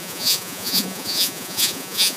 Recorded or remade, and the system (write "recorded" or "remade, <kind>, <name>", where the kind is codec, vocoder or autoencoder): remade, vocoder, Vocos